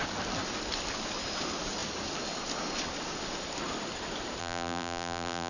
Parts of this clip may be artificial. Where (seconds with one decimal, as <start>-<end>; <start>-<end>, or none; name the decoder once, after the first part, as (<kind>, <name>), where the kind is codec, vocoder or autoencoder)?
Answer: 4.4-5.5 (vocoder, BigVGAN v2)